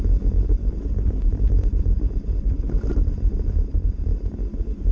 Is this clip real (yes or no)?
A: yes